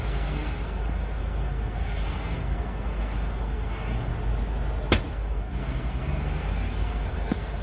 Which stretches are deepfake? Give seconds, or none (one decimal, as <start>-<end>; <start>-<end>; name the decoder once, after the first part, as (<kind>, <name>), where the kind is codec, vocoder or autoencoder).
0.0-4.1 (codec, SNAC); 5.1-7.6